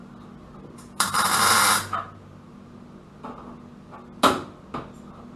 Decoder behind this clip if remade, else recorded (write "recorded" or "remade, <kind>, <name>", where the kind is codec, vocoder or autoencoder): recorded